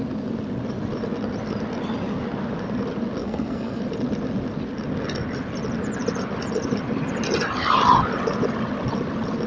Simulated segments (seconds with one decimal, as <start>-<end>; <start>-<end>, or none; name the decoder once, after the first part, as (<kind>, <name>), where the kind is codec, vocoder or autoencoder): 3.2-3.8 (codec, SNAC)